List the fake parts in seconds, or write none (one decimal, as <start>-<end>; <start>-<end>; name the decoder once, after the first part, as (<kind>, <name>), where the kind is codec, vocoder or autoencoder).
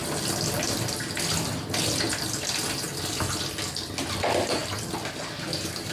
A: none